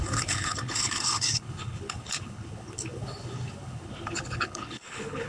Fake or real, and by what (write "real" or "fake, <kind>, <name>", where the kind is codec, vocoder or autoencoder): fake, codec, HILCodec